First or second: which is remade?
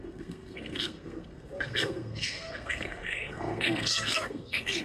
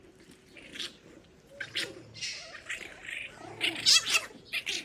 first